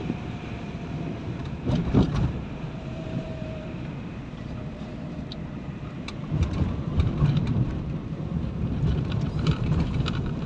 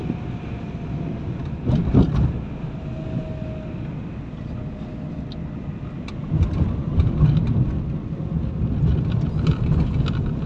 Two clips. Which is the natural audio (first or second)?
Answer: second